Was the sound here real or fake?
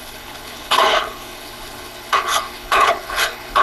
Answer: fake